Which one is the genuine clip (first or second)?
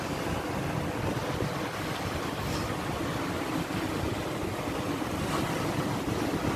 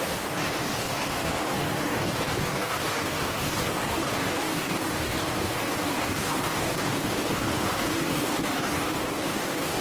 first